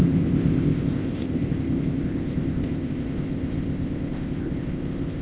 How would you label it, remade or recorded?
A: remade